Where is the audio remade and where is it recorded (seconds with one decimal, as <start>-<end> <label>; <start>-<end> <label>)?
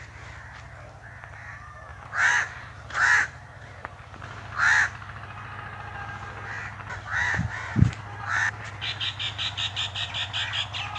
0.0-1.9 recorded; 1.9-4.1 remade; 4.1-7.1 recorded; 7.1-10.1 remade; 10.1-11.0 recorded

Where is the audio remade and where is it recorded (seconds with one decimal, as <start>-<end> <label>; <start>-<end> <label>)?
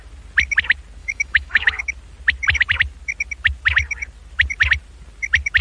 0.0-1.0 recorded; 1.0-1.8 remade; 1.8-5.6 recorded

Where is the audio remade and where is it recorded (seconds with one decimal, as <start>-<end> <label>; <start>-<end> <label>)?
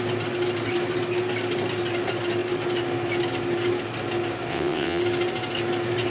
0.0-4.5 recorded; 4.5-5.0 remade; 5.0-6.1 recorded